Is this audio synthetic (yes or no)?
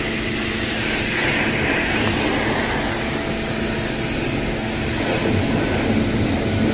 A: no